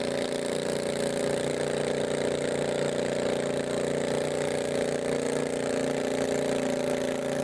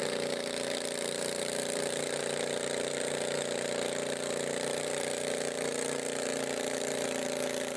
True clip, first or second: first